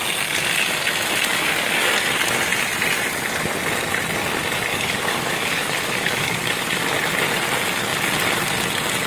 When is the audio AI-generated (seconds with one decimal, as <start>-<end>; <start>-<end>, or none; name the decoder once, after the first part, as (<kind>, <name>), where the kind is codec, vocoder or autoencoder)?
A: 1.3-1.9 (codec, DAC); 4.7-6.5